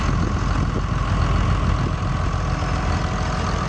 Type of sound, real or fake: real